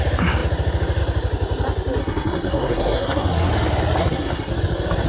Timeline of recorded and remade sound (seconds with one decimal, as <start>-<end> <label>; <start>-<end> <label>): 0.0-2.0 recorded; 2.0-3.5 remade; 3.5-4.0 recorded; 4.0-4.5 remade; 4.5-5.1 recorded